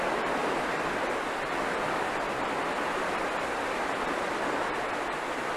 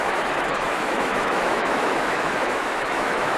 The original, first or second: first